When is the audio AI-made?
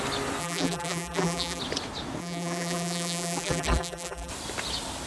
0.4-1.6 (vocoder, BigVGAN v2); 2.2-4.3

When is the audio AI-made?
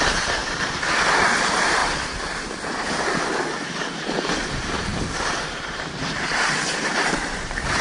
0.0-0.4 (vocoder, BigVGAN v2); 1.1-1.8; 4.0-7.8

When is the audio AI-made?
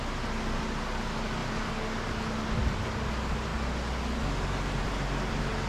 none